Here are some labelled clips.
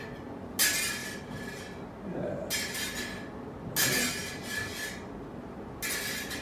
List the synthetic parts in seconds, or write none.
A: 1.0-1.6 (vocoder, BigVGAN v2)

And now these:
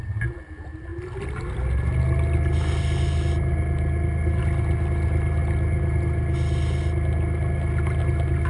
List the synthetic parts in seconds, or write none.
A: none

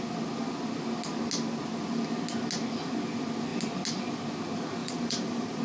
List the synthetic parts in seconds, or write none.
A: 4.8-5.6 (vocoder, BigVGAN v2)